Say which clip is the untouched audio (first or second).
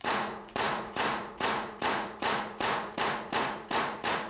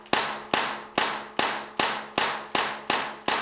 second